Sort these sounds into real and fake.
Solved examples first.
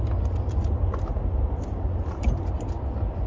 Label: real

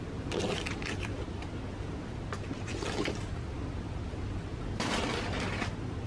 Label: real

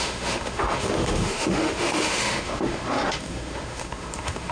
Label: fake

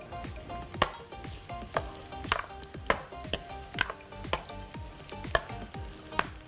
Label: real